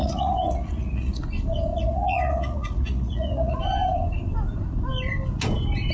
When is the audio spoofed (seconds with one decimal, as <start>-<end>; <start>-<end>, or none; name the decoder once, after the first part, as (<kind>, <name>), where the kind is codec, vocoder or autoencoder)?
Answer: 0.0-1.2 (vocoder, Vocos); 1.7-3.6